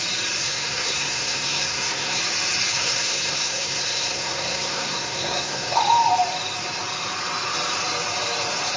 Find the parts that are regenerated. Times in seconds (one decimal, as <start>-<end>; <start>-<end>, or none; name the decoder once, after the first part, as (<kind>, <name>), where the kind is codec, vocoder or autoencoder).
0.4-2.2 (codec, SNAC); 2.7-5.8